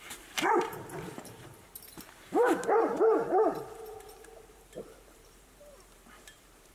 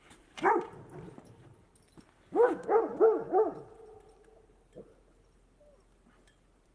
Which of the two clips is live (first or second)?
second